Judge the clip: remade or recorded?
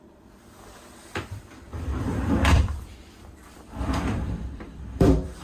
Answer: remade